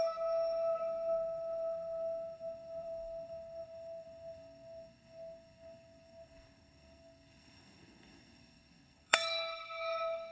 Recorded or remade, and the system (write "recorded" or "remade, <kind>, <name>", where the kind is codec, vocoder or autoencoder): remade, codec, SNAC